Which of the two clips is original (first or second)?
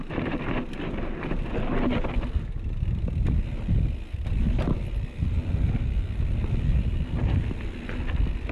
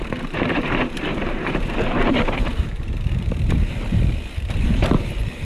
first